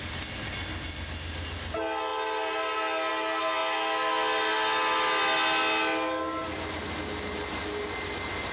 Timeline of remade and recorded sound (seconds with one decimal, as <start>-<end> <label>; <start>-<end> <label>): 0.0-8.5 recorded